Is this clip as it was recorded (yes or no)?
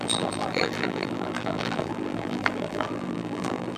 no